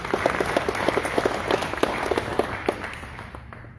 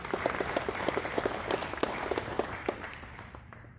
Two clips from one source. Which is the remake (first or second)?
second